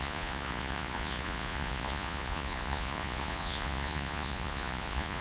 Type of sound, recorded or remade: remade